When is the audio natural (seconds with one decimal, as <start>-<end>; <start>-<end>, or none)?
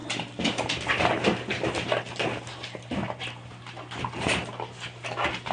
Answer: 0.0-5.5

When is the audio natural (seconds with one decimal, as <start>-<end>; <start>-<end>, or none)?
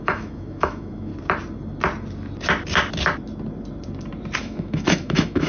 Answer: 1.1-4.4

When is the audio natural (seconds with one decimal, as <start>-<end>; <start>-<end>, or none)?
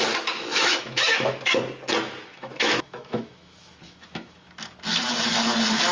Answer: 0.0-0.5; 1.6-2.3; 4.5-5.9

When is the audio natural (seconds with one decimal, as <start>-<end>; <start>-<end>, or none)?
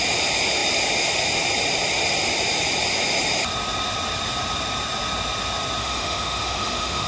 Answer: 0.0-5.8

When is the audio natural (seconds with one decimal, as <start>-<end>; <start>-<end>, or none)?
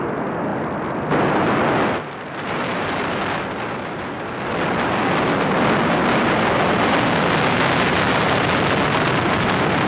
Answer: 0.0-9.9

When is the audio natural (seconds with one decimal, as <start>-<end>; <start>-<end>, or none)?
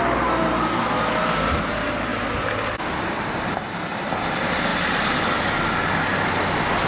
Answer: 0.0-6.9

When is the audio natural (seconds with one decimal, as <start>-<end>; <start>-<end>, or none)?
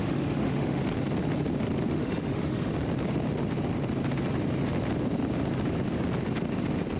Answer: 0.8-1.9; 2.7-7.0